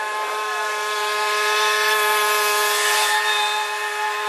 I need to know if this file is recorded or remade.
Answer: recorded